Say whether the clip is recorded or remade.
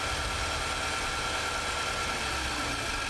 recorded